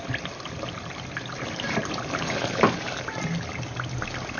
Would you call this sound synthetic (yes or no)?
no